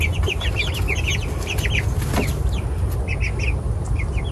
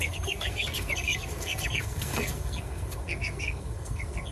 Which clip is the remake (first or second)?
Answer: second